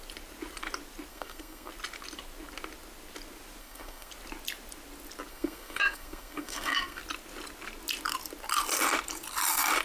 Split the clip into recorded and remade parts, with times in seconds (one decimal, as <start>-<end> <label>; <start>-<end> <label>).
0.0-1.1 recorded; 1.1-1.7 remade; 1.7-3.6 recorded; 3.6-4.1 remade; 4.1-5.3 recorded; 5.3-7.0 remade; 7.0-9.8 recorded